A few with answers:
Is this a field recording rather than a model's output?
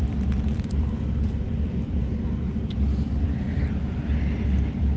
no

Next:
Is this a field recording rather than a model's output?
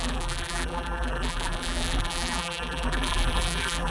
no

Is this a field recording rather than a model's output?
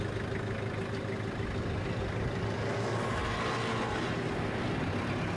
yes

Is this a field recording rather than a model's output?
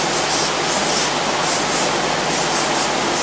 yes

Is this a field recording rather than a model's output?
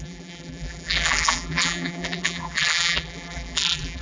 no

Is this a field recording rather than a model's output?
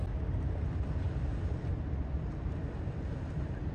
yes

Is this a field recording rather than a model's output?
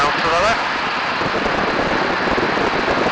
yes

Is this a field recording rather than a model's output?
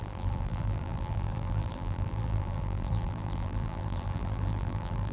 no